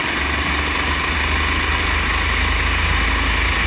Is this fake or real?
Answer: real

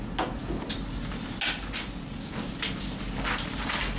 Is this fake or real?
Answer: real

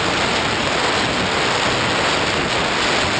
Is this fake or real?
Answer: real